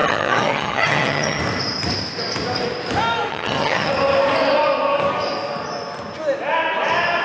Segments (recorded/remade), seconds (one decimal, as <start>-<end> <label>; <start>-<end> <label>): 0.0-1.4 remade; 1.4-3.3 recorded; 3.3-3.9 remade; 3.9-7.2 recorded